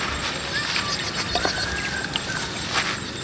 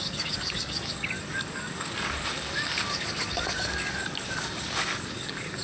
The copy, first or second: second